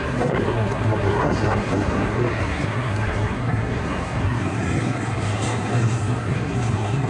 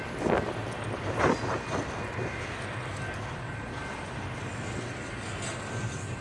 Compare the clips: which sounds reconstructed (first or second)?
first